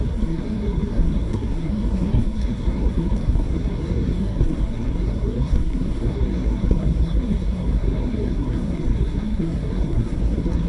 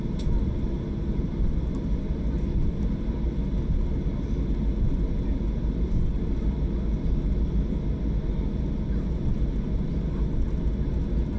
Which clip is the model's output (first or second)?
first